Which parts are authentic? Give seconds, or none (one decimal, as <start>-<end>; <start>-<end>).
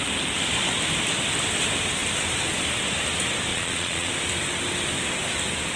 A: 0.0-3.5; 4.1-5.8